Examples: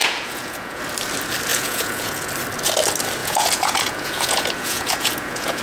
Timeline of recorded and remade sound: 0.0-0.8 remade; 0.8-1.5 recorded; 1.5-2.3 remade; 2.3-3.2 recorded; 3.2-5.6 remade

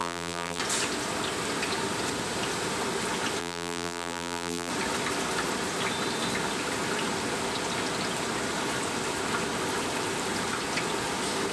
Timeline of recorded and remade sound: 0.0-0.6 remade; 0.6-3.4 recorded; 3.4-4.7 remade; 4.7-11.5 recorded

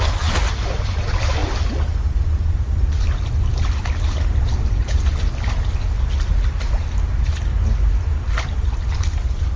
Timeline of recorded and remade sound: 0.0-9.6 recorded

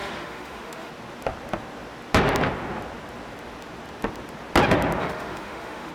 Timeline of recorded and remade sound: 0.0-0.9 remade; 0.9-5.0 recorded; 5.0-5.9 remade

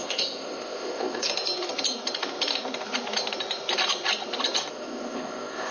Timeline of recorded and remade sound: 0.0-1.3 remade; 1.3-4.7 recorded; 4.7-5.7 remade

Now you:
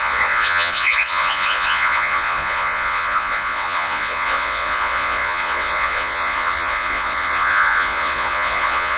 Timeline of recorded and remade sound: 0.0-9.0 remade

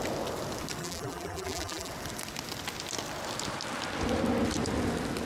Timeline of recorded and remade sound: 0.0-0.8 recorded; 0.8-1.9 remade; 1.9-5.3 recorded

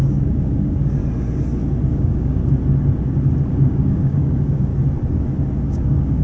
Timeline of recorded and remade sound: 0.0-1.0 remade; 1.0-1.9 recorded; 1.9-2.4 remade; 2.4-3.5 recorded; 3.5-4.7 remade; 4.7-5.7 recorded; 5.7-6.2 remade